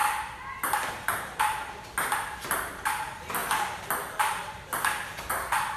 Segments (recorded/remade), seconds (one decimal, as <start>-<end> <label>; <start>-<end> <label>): 0.0-5.8 recorded